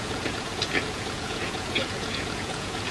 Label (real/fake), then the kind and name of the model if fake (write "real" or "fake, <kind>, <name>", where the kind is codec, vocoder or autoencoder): fake, vocoder, Vocos